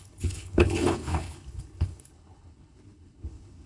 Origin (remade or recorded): remade